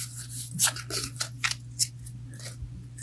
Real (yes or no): yes